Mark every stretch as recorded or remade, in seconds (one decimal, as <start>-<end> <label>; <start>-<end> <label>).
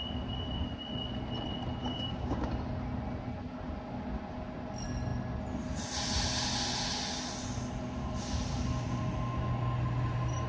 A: 0.0-1.8 recorded; 1.8-2.5 remade; 2.5-10.5 recorded